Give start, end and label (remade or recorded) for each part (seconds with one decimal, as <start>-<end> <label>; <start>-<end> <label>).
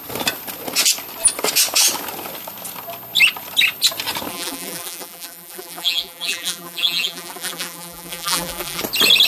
0.0-4.3 recorded; 4.3-8.8 remade; 8.8-9.3 recorded